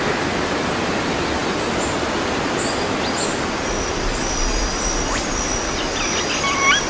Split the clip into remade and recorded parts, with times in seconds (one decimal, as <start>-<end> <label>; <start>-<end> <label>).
0.0-6.9 recorded